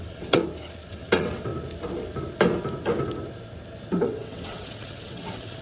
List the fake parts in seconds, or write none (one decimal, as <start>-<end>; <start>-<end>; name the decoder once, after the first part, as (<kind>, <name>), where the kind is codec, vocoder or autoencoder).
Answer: 0.0-0.4 (vocoder, WaveNeXt); 0.9-1.5; 4.0-5.6